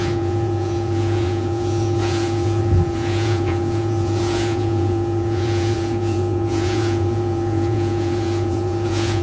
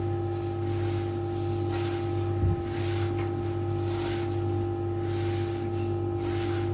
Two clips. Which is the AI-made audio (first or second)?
first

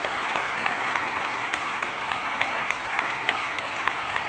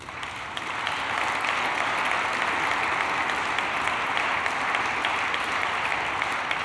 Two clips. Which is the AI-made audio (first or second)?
first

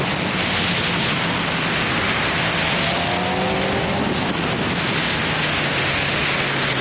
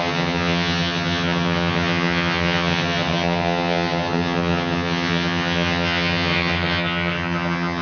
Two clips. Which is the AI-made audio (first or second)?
second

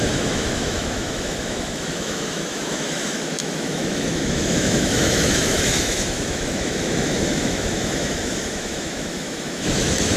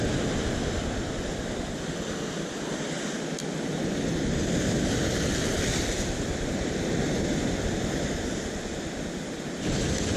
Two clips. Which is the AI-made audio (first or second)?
first